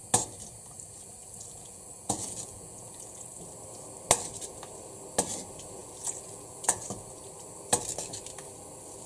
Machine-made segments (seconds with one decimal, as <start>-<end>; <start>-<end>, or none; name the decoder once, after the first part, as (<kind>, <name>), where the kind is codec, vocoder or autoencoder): 1.2-3.3 (vocoder, Vocos); 5.8-6.9